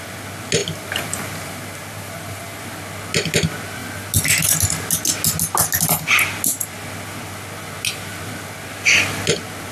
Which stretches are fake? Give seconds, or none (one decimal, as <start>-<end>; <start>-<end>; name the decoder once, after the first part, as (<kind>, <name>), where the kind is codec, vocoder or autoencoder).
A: 0.6-2.6 (vocoder, BigVGAN v2)